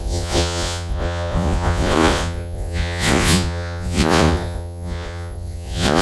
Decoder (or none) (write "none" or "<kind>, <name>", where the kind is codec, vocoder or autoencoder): vocoder, Vocos